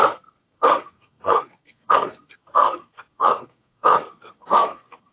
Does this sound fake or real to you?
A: fake